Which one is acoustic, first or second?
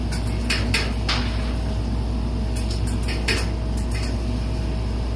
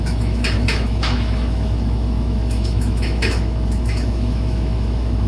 first